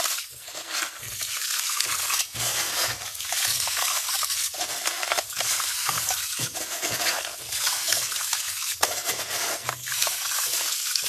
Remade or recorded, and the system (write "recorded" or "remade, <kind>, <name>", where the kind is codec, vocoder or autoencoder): remade, codec, SNAC